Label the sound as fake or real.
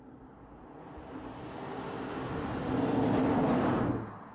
real